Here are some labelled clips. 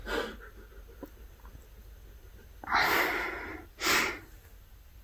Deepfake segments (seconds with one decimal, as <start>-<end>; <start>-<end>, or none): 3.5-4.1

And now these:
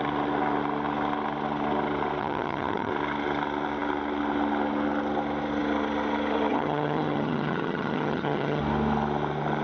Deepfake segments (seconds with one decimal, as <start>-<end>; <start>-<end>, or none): 2.2-2.9; 6.5-8.6

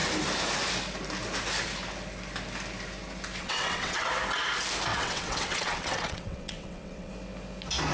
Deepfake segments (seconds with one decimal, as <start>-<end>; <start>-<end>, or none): 3.4-4.1; 4.9-7.1

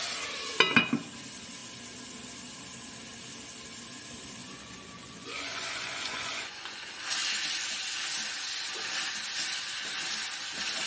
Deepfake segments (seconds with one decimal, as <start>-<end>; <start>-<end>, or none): 4.4-6.9

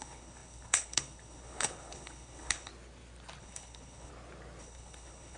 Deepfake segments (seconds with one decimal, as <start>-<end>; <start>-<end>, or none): 0.0-2.7; 3.4-4.1; 4.6-5.4